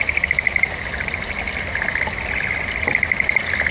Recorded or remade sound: recorded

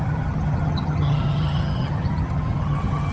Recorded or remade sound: remade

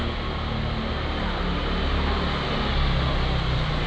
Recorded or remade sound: recorded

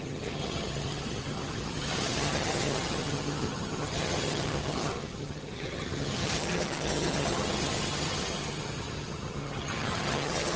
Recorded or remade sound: remade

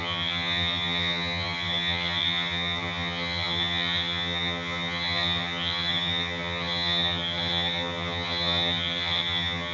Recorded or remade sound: remade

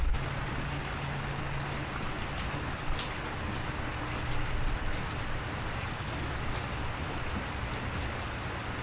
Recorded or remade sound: recorded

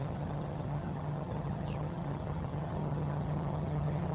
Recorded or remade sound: remade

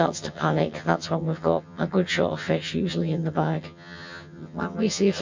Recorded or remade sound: remade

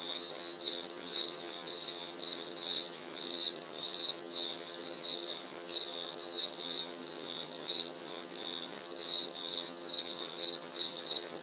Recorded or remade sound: remade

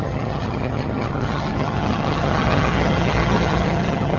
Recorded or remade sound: remade